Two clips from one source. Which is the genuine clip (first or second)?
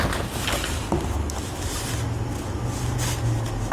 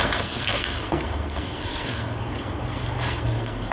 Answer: first